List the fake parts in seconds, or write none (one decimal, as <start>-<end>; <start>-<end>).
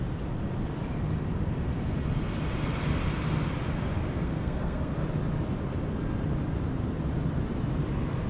4.2-4.9